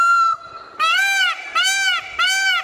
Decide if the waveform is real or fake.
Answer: fake